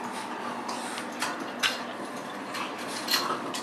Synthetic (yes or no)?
no